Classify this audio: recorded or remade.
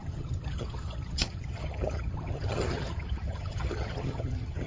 remade